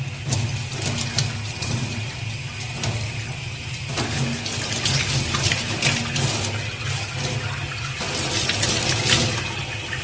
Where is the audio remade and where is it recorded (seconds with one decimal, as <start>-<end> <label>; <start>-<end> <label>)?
0.0-1.6 recorded; 1.6-2.2 remade; 2.2-10.0 recorded